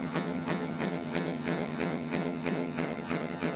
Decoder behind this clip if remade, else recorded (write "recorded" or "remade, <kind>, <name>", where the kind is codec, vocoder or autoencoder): remade, vocoder, HiFi-GAN